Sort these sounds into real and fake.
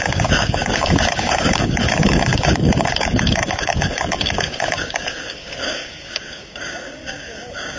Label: fake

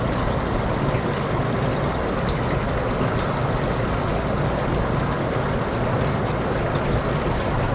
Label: real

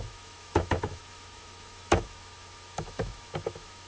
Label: fake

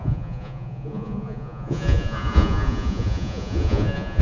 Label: fake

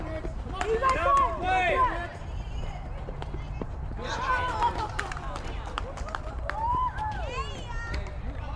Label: fake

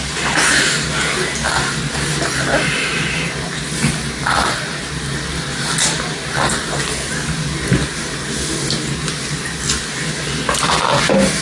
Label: real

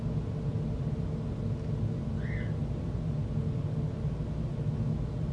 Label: real